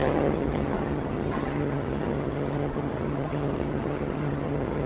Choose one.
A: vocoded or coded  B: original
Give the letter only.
A